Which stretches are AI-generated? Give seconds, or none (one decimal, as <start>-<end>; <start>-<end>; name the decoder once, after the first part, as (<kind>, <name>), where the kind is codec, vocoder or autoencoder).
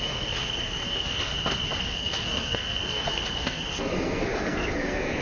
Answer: 0.0-1.3 (codec, SNAC); 1.8-5.2